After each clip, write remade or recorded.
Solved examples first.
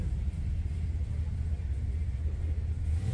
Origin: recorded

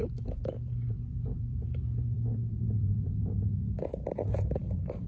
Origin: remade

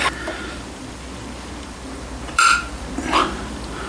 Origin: remade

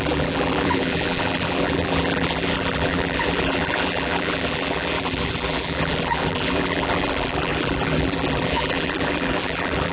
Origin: remade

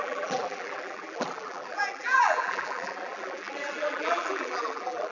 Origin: remade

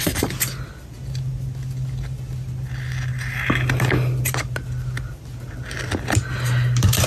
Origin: recorded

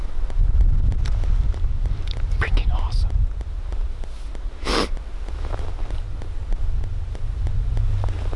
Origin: recorded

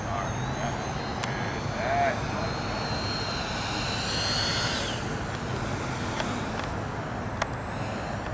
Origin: recorded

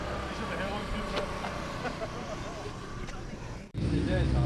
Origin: remade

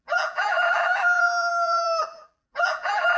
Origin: remade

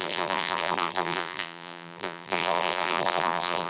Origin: remade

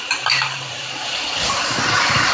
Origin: remade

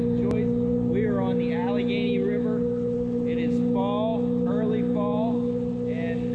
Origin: recorded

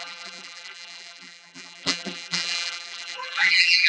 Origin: remade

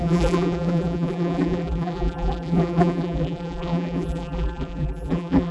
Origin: remade